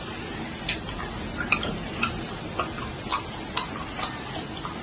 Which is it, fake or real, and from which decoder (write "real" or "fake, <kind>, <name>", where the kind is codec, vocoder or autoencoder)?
real